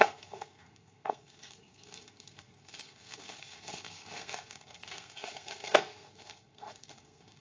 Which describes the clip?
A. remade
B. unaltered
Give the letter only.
A